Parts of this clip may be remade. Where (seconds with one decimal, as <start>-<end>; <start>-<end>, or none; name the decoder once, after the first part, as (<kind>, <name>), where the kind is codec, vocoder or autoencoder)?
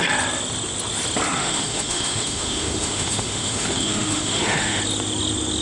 1.4-4.8 (autoencoder, DAC-VAE)